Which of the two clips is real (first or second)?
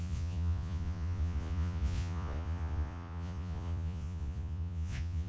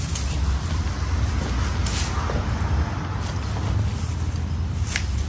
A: second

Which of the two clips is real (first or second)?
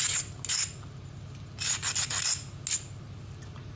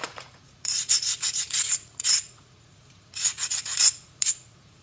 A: first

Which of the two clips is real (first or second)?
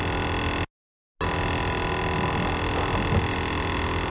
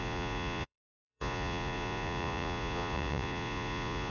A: first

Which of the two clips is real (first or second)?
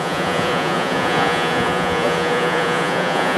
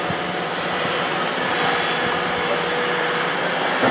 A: second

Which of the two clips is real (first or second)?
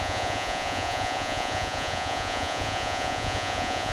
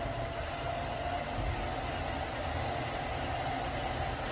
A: second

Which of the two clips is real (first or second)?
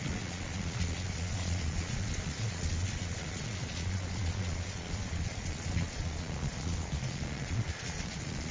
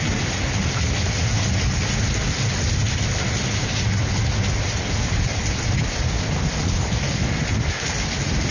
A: second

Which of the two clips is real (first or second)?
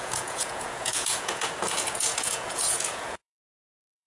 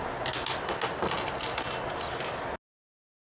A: second